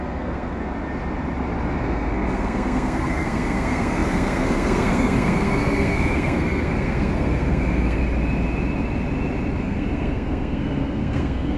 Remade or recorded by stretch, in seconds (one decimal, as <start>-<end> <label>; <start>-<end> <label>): 0.0-0.6 remade; 0.6-1.8 recorded; 1.8-8.0 remade; 8.0-9.6 recorded; 9.6-11.6 remade